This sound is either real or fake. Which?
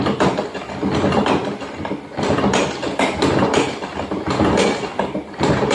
real